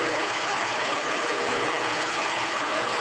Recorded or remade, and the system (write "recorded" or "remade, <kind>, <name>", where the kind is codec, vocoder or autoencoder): remade, codec, HILCodec